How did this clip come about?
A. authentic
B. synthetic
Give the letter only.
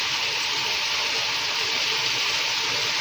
A